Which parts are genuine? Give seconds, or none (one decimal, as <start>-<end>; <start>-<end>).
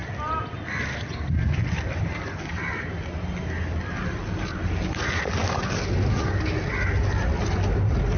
0.0-8.2